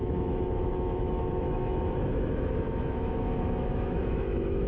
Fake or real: fake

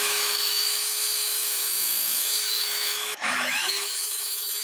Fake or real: fake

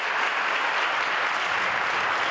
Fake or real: real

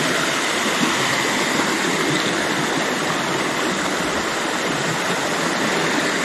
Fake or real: real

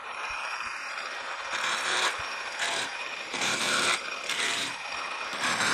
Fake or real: fake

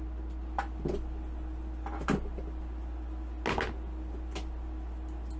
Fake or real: real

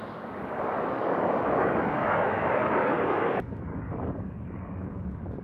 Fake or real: fake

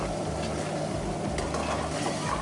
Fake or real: real